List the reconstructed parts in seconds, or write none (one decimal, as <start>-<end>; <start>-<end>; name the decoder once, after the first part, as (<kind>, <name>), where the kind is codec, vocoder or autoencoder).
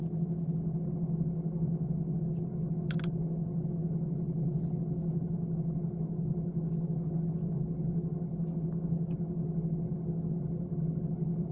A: none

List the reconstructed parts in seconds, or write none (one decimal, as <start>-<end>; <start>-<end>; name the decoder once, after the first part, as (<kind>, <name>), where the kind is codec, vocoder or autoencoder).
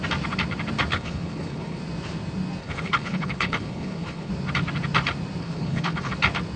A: 0.9-1.8 (codec, HILCodec); 2.6-4.3; 5.4-6.1